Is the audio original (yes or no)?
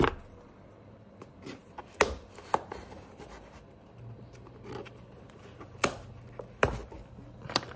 yes